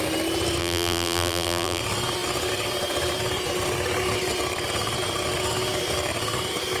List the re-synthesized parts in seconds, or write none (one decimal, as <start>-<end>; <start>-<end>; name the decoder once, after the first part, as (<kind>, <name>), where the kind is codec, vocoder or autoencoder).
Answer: 0.6-1.8 (vocoder, BigVGAN v2)